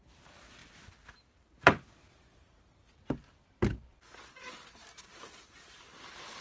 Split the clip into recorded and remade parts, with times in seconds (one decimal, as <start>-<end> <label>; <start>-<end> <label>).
0.0-6.4 recorded